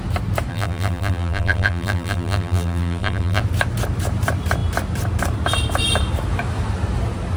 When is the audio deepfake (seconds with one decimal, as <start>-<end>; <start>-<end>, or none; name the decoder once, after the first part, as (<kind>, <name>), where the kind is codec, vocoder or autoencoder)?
0.5-3.4 (vocoder, BigVGAN v2)

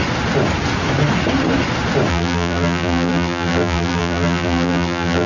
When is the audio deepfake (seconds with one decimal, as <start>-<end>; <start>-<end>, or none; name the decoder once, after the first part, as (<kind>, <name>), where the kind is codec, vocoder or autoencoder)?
2.1-5.3 (vocoder, BigVGAN v2)

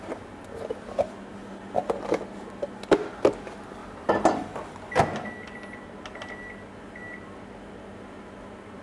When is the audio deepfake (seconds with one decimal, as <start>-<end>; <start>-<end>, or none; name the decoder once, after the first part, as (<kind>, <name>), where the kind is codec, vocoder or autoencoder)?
1.4-2.2 (vocoder, BigVGAN v2)

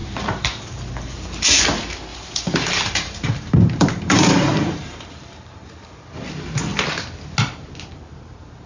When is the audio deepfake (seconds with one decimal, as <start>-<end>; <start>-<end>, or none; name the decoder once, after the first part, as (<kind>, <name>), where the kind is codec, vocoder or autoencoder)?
0.0-1.6 (vocoder, BigVGAN v2); 2.1-6.1

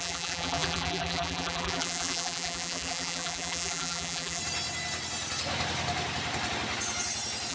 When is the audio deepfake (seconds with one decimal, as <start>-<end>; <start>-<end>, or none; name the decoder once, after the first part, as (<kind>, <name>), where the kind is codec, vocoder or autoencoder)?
0.0-4.4 (vocoder, BigVGAN v2)